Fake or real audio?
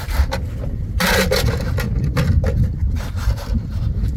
real